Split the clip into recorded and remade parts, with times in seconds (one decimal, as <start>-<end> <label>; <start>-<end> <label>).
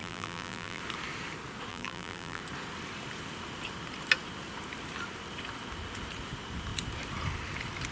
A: 0.0-0.8 remade; 0.8-1.7 recorded; 1.7-2.4 remade; 2.4-7.9 recorded